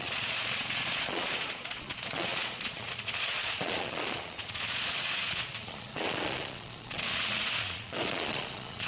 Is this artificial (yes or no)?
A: yes